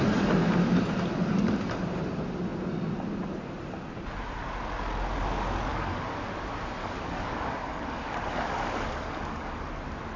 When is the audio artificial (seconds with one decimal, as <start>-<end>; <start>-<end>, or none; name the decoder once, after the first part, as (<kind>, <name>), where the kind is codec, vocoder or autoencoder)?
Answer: 5.7-6.3 (codec, DAC); 6.8-9.6